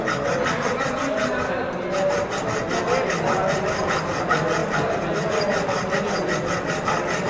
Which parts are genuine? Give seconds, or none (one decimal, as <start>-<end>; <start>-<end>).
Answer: 0.0-7.3